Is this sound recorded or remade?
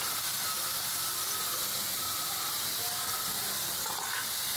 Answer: recorded